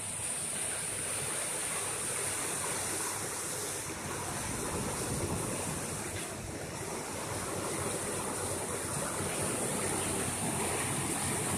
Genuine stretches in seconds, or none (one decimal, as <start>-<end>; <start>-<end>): 0.0-9.7; 10.4-11.6